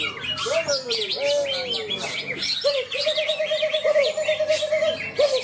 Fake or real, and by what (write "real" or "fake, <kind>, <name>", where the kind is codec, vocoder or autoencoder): real